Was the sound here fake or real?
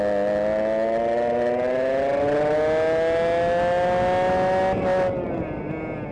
real